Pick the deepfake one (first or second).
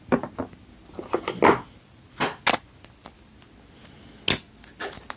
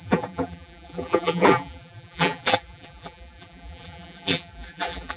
second